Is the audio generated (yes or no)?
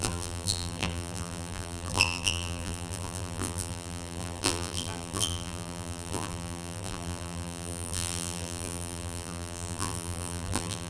yes